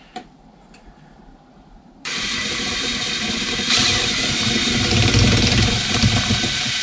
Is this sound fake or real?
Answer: fake